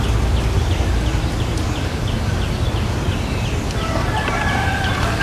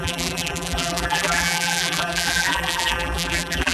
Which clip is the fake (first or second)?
second